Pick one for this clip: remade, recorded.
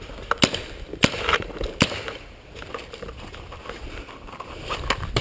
recorded